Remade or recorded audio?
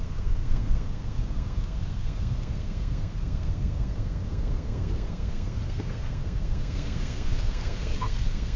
remade